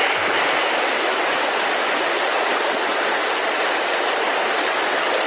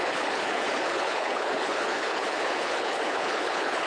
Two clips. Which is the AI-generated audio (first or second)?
second